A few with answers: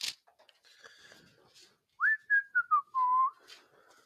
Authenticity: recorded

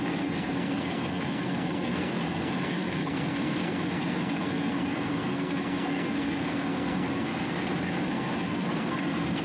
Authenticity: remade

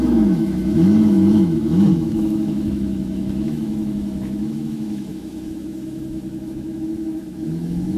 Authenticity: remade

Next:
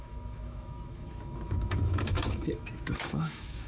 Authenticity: remade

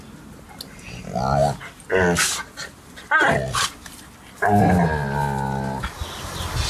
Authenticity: recorded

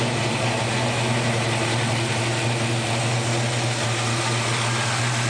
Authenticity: recorded